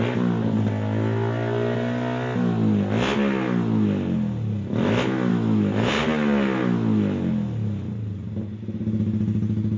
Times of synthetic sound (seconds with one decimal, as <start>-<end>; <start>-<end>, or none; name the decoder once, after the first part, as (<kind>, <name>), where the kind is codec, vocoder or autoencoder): 5.3-5.9 (autoencoder, DAC-VAE)